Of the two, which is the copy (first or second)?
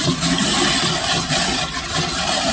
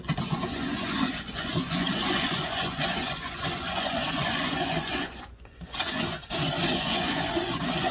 second